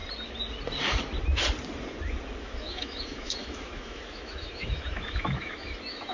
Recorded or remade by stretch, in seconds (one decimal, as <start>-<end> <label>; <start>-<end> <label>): 0.0-2.4 recorded; 2.4-6.1 remade